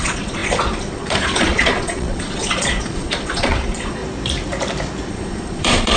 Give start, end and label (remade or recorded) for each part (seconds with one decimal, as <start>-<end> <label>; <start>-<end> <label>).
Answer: 0.0-4.0 remade; 4.0-5.1 recorded; 5.1-6.0 remade